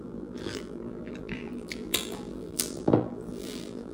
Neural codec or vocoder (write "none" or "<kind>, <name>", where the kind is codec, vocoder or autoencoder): vocoder, BigVGAN v2